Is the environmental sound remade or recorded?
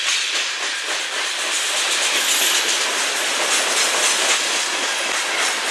recorded